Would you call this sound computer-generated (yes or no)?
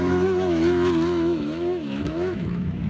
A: yes